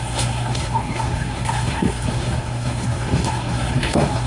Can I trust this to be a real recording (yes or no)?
no